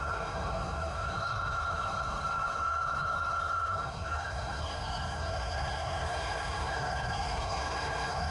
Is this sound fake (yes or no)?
yes